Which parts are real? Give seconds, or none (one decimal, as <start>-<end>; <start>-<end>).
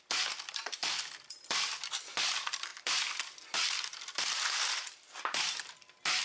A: 0.0-6.2